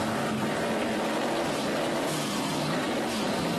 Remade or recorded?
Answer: recorded